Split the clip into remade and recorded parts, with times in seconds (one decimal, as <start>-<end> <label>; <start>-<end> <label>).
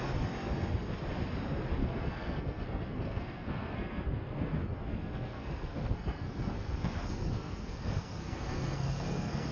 0.0-1.8 recorded; 1.8-4.5 remade; 4.5-4.9 recorded; 4.9-9.5 remade